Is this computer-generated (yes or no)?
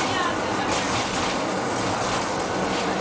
no